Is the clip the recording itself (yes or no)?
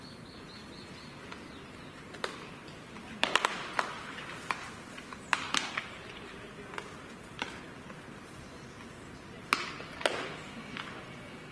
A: yes